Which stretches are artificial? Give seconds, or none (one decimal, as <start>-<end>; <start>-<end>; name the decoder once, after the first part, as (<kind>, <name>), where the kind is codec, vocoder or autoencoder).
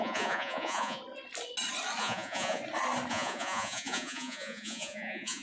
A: 0.0-1.0 (vocoder, Vocos); 2.0-2.6; 3.1-5.4